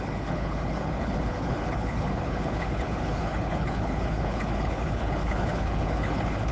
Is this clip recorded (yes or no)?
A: no